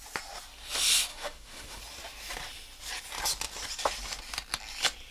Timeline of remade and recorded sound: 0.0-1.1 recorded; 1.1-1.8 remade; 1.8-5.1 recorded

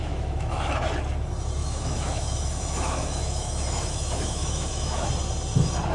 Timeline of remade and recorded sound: 0.0-0.7 remade; 0.7-1.6 recorded; 1.6-5.1 remade; 5.1-5.9 recorded